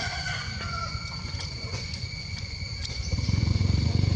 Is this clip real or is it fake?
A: fake